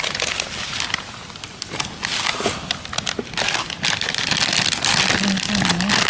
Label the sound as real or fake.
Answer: real